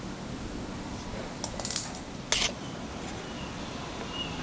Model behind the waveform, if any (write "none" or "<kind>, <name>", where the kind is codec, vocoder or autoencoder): none